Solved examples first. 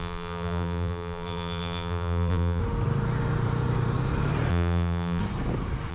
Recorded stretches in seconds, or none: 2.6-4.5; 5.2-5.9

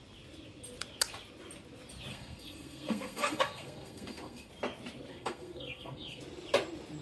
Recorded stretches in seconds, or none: 0.0-2.1; 4.5-5.1; 6.2-7.0

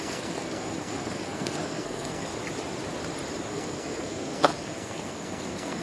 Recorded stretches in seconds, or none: 2.3-3.5

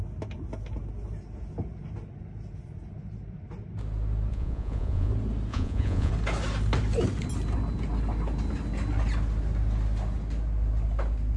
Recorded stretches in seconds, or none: 0.0-4.3; 5.1-5.5; 6.1-11.4

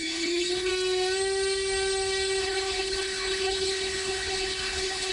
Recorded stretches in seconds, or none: 0.7-2.4